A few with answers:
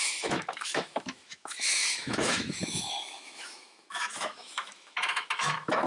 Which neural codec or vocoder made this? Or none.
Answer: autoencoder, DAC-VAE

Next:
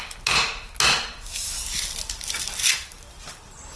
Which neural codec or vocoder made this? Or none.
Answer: none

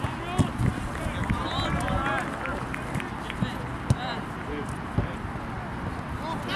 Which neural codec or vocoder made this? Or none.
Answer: none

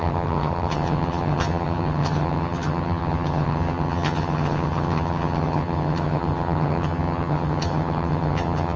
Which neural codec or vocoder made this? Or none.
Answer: vocoder, HiFi-GAN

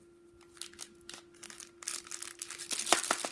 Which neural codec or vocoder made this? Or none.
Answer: none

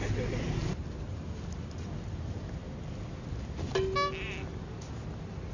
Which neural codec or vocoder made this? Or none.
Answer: none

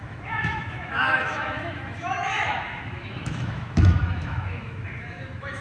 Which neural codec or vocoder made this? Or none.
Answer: autoencoder, DAC-VAE